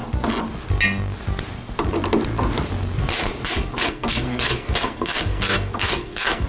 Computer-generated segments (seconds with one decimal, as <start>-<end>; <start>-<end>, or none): 3.9-6.5